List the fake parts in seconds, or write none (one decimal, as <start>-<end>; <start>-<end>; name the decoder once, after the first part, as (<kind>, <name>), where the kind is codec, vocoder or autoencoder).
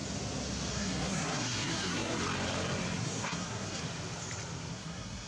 0.7-2.2 (codec, SNAC); 3.0-3.8; 4.7-5.3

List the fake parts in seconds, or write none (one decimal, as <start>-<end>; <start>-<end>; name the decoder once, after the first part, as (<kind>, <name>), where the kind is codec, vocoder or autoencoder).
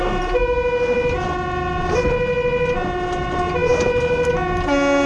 none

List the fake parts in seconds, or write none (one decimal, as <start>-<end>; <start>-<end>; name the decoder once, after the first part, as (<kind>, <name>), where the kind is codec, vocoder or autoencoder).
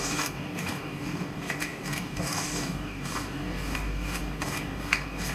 0.0-5.3 (codec, DAC)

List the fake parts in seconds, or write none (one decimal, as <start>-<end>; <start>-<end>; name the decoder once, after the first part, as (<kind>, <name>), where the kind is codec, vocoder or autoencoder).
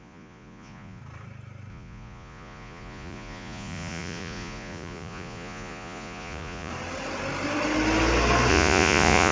0.0-1.0 (vocoder, Vocos); 1.7-6.7; 8.5-9.3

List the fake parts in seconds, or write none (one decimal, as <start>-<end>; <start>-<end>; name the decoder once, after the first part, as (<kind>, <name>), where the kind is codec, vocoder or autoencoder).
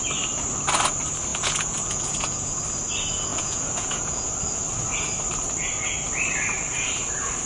1.3-2.6 (vocoder, Vocos); 3.3-4.3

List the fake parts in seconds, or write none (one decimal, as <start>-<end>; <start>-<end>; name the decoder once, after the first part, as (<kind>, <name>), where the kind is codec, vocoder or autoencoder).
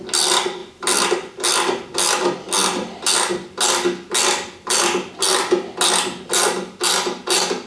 none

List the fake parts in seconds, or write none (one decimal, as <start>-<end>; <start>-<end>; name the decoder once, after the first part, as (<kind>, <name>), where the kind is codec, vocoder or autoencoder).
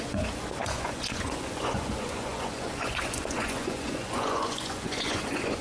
0.0-5.6 (vocoder, Vocos)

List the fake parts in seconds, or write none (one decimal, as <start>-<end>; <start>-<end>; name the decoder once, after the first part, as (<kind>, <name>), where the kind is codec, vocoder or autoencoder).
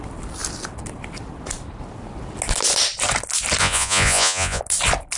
3.6-4.6 (vocoder, Vocos)